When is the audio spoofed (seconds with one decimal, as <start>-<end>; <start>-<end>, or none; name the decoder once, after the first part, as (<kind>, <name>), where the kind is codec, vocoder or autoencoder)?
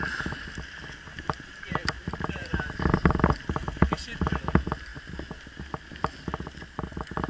1.1-3.8 (vocoder, BigVGAN v2)